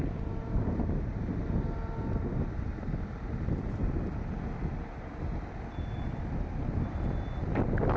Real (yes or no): yes